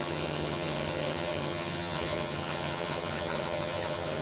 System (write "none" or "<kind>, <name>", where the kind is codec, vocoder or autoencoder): vocoder, HiFi-GAN